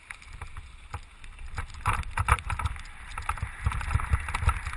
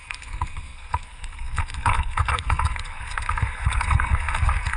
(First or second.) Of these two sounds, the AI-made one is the second